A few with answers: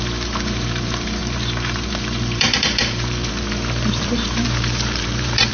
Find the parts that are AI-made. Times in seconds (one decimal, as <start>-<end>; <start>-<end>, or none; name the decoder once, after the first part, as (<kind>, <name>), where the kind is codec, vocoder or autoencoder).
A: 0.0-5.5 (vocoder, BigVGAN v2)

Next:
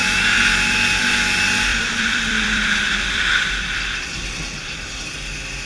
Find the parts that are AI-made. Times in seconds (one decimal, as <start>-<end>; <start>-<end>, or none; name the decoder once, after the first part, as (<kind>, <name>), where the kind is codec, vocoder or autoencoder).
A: 1.7-4.0 (vocoder, BigVGAN v2)

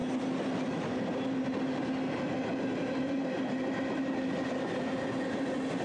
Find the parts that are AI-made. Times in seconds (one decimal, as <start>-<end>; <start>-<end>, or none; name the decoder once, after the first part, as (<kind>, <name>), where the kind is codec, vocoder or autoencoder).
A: 3.0-5.8 (vocoder, BigVGAN v2)